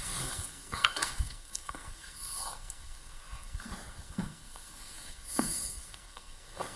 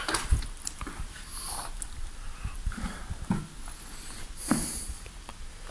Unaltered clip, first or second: second